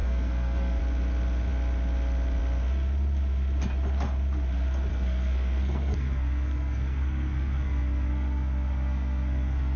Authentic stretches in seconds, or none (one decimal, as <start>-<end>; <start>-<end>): 0.8-4.9